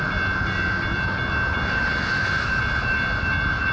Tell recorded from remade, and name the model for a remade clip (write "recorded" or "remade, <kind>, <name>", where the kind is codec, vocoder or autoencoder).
recorded